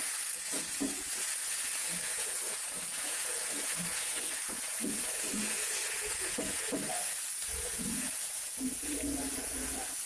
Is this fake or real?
fake